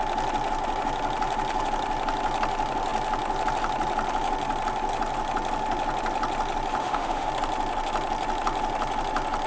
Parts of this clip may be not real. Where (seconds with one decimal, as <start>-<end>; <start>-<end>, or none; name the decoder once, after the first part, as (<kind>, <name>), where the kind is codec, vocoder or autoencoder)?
6.8-7.3 (autoencoder, DAC-VAE)